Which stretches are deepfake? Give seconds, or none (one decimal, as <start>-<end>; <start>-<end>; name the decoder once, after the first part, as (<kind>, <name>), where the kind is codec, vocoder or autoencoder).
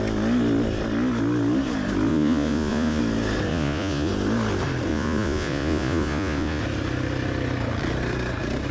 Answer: 2.1-3.0 (vocoder, Vocos); 3.5-4.1; 4.9-6.6